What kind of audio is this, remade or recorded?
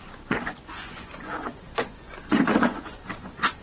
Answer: remade